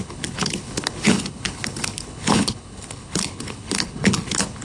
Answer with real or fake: fake